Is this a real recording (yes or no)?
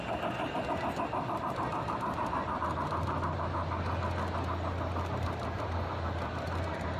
yes